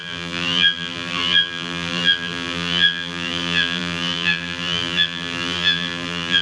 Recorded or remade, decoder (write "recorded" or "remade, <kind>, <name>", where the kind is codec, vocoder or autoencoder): remade, vocoder, BigVGAN v2